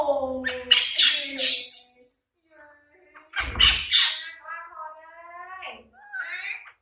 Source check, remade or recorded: recorded